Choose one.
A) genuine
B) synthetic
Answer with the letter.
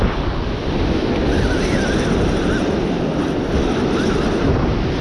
A